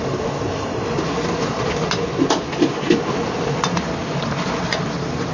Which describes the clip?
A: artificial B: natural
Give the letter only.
B